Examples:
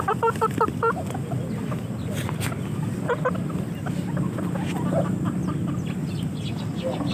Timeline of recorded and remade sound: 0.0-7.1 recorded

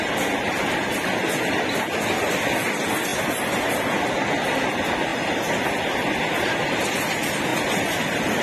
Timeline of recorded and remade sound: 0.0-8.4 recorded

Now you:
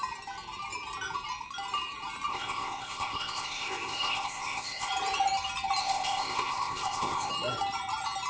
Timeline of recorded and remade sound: 0.0-2.3 recorded; 2.3-4.9 remade; 4.9-5.8 recorded; 5.8-7.3 remade; 7.3-8.3 recorded

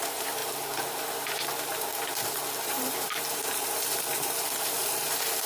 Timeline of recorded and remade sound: 0.0-0.4 remade; 0.4-1.5 recorded; 1.5-5.5 remade

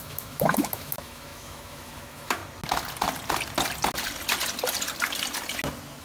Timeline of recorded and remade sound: 0.0-2.4 remade; 2.4-6.0 recorded

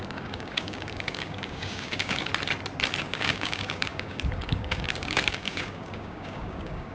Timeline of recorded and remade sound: 0.0-2.3 remade; 2.3-3.0 recorded; 3.0-6.9 remade